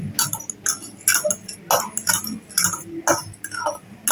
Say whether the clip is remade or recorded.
recorded